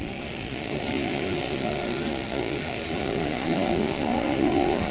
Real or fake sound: fake